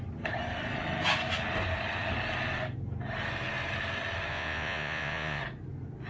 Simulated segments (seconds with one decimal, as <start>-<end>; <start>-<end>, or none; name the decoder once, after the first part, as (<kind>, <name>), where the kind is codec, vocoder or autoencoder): 4.3-5.4 (vocoder, Vocos)